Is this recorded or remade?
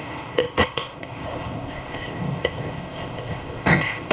remade